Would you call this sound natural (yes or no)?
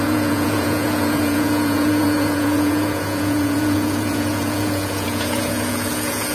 no